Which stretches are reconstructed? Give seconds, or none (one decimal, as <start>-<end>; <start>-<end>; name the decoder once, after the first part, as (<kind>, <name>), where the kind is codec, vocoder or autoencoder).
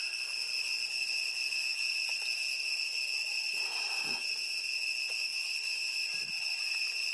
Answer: 3.2-4.6 (vocoder, BigVGAN v2); 5.3-7.1